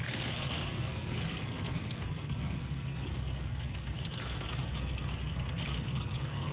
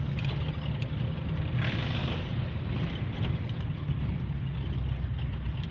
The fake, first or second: first